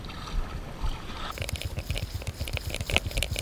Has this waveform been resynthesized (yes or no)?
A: yes